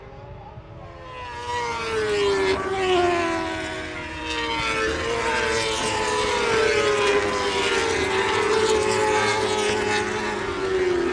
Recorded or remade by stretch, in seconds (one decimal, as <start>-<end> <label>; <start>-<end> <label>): 0.0-11.1 recorded